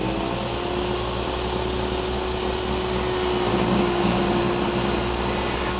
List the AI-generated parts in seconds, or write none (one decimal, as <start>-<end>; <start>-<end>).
3.5-4.4